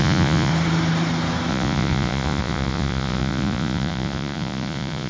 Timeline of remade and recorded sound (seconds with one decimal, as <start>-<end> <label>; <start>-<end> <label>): 0.0-0.5 remade; 0.5-1.5 recorded; 1.5-5.1 remade

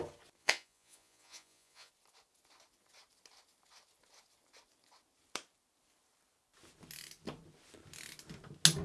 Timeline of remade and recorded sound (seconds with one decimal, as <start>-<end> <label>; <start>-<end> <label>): 0.0-0.4 recorded; 0.4-1.9 remade; 1.9-8.8 recorded

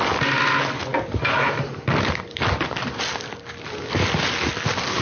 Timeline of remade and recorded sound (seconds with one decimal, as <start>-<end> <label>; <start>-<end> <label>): 0.0-5.0 recorded

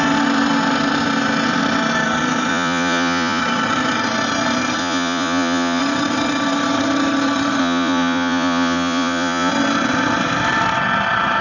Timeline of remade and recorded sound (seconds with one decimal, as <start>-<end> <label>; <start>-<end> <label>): 0.0-2.5 recorded; 2.5-3.4 remade; 3.4-4.8 recorded; 4.8-5.8 remade; 5.8-7.6 recorded; 7.6-9.5 remade; 9.5-11.4 recorded

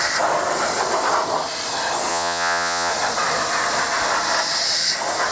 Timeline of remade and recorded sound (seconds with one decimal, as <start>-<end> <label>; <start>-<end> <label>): 0.0-2.1 recorded; 2.1-2.9 remade; 2.9-5.3 recorded

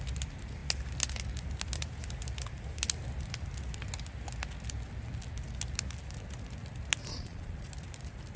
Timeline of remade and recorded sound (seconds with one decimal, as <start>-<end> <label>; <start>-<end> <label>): 0.0-7.1 recorded; 7.1-7.7 remade; 7.7-8.4 recorded

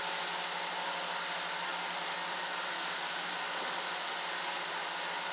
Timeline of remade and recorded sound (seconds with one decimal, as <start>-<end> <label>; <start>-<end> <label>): 0.0-5.3 recorded

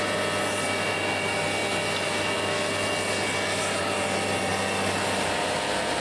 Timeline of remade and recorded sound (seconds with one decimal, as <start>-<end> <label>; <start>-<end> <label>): 0.0-6.0 recorded